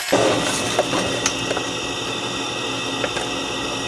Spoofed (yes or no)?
no